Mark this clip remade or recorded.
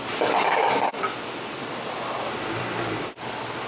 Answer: remade